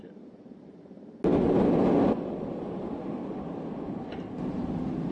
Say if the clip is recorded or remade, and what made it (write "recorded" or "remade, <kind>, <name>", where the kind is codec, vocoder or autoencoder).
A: recorded